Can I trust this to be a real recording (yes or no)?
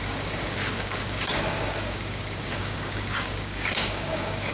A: no